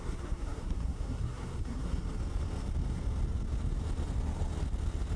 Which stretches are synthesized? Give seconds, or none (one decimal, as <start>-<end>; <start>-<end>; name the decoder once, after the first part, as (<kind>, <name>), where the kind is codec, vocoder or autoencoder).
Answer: 0.0-2.0 (codec, SNAC)